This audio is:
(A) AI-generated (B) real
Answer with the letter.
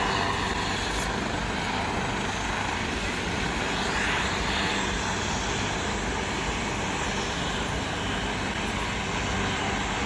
B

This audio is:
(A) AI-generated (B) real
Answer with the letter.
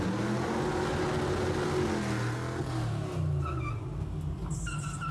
B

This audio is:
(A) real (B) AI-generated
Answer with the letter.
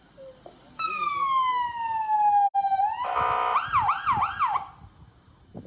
A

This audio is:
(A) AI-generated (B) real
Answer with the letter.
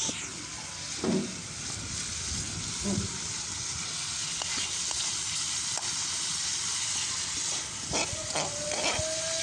B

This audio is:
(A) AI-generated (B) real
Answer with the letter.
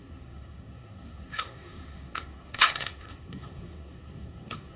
A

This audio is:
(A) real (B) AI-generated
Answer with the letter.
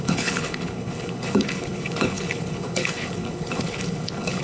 B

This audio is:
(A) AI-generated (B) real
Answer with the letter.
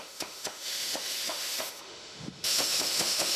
A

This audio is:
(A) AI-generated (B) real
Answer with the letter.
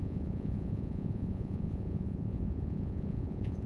A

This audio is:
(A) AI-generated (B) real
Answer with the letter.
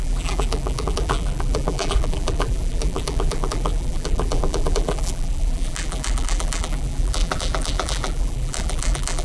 A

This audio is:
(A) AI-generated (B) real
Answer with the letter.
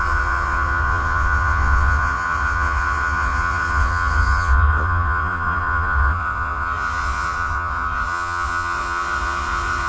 A